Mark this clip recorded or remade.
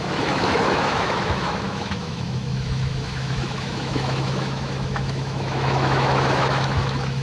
remade